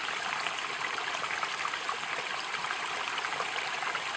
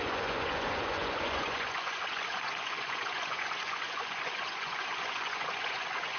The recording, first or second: first